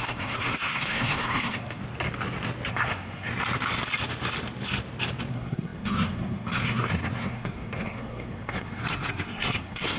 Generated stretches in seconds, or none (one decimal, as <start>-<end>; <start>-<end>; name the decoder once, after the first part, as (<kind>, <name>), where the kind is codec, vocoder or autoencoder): 0.0-1.8 (codec, SNAC); 2.7-3.3; 5.3-10.0